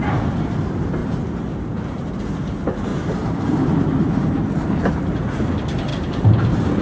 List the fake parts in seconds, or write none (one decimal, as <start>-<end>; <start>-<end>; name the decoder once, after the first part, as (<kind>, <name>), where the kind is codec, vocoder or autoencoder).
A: 1.0-2.1 (vocoder, BigVGAN v2); 2.9-4.9; 5.9-6.8